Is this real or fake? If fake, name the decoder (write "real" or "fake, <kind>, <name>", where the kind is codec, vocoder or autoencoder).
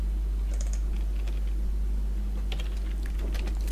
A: real